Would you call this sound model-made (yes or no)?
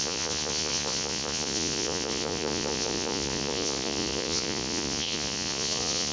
yes